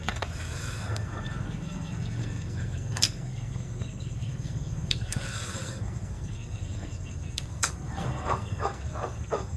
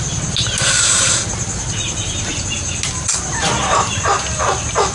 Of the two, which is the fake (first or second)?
first